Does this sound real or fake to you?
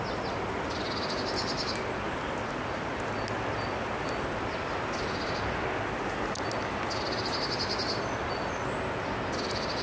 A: real